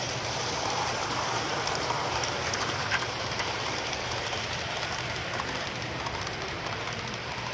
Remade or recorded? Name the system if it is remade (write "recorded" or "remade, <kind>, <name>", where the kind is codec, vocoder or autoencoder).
remade, vocoder, BigVGAN v2